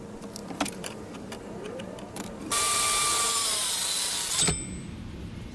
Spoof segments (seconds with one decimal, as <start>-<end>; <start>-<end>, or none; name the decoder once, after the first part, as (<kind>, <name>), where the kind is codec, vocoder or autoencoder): 0.4-3.7 (vocoder, BigVGAN v2)